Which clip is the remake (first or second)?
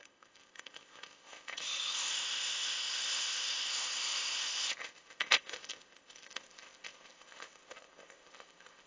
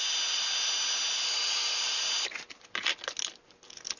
first